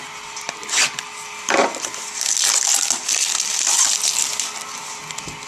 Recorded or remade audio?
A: recorded